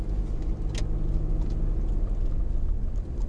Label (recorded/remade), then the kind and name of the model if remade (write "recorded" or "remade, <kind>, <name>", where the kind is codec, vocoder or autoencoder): recorded